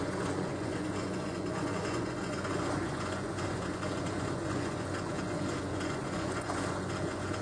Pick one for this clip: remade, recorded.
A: remade